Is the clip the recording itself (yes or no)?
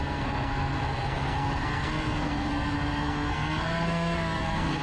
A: no